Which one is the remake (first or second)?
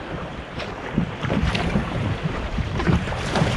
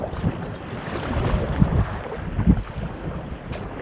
first